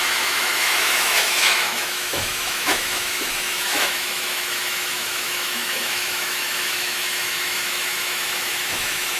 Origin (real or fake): fake